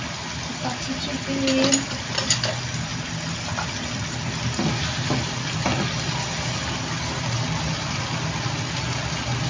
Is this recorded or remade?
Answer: recorded